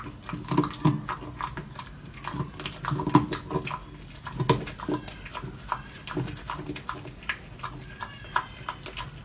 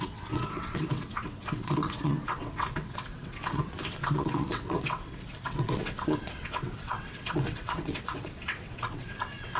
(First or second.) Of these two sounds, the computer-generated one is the second